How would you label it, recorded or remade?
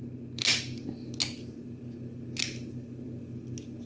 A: recorded